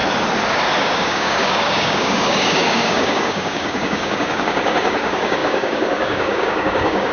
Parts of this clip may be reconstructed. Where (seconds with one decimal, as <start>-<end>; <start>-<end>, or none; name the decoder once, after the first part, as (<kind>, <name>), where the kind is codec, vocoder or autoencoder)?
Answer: 0.8-7.1 (codec, DAC)